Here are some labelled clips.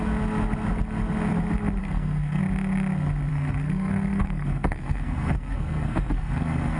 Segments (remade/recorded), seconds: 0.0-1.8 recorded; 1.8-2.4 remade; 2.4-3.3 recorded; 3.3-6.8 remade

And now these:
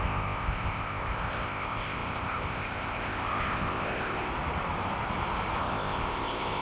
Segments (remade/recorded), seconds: 0.0-4.3 remade; 4.3-5.6 recorded; 5.6-6.6 remade

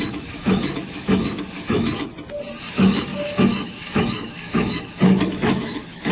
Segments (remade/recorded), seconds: 0.0-2.1 remade; 2.1-2.7 recorded; 2.7-6.1 remade

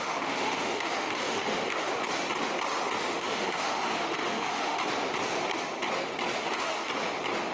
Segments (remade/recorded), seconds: 0.0-1.9 remade; 1.9-3.0 recorded; 3.0-4.8 remade; 4.8-6.4 recorded; 6.4-6.9 remade; 6.9-7.5 recorded

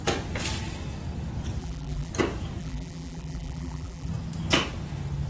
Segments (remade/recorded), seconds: 0.0-1.6 recorded; 1.6-2.1 remade; 2.1-2.6 recorded; 2.6-4.1 remade; 4.1-5.3 recorded

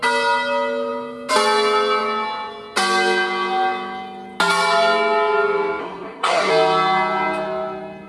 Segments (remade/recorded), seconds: 0.0-5.8 recorded; 5.8-6.5 remade; 6.5-8.1 recorded